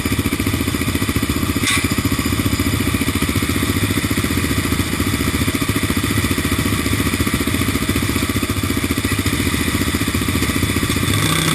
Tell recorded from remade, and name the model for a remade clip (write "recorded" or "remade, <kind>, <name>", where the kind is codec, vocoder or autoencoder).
recorded